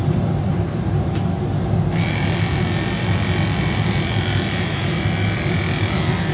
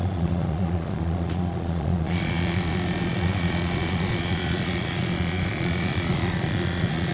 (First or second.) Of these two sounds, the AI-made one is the second